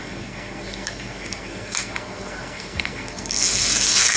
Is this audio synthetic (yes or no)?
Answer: yes